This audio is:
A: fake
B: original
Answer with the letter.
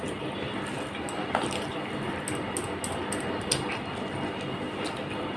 B